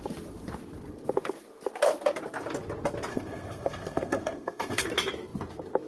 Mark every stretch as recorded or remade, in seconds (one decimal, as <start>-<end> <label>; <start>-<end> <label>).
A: 0.0-3.1 recorded; 3.1-4.8 remade; 4.8-5.9 recorded